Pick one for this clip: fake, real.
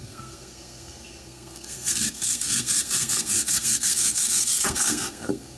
fake